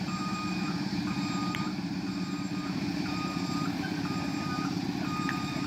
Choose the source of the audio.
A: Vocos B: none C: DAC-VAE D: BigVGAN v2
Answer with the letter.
D